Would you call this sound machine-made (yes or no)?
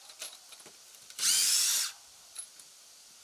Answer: no